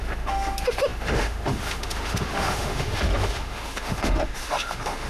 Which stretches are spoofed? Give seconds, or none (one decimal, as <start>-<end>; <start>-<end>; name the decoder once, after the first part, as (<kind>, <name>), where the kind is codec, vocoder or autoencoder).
0.0-5.1 (autoencoder, DAC-VAE)